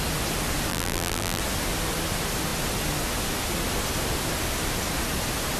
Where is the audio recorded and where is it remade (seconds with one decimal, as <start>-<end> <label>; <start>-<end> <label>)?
0.0-0.7 recorded; 0.7-1.4 remade; 1.4-5.6 recorded